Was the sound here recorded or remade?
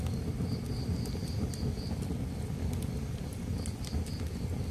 recorded